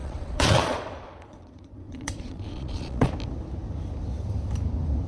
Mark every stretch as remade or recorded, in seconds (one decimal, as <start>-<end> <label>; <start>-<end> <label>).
0.0-3.1 remade; 3.1-5.1 recorded